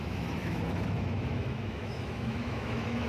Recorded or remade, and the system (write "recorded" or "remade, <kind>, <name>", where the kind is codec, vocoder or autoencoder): remade, autoencoder, DAC-VAE